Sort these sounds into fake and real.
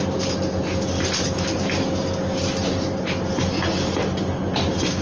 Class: real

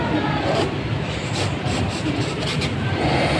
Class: real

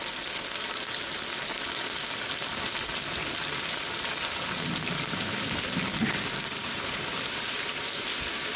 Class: real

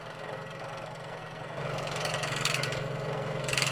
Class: fake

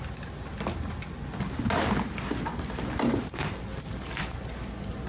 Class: real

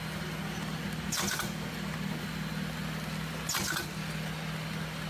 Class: real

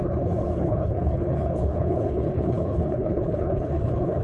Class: fake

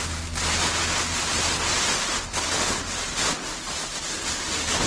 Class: real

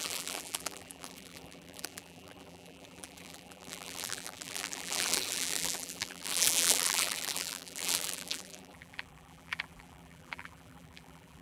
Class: fake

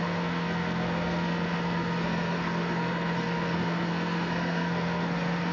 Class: fake